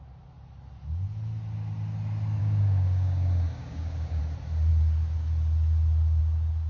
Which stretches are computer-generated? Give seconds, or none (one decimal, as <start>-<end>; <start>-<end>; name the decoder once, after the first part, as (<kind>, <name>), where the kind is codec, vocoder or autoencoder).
2.4-4.2 (codec, DAC)